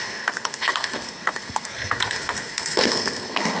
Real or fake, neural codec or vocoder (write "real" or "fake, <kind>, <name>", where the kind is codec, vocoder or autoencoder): fake, codec, SNAC